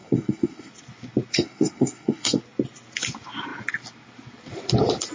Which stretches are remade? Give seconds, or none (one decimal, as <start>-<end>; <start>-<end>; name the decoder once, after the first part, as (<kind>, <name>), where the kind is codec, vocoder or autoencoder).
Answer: 0.0-0.7 (codec, SNAC); 1.3-2.4